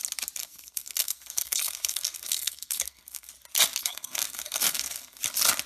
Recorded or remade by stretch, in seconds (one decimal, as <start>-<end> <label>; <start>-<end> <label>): 0.0-0.4 recorded; 0.4-3.3 remade; 3.3-3.8 recorded; 3.8-5.2 remade; 5.2-5.7 recorded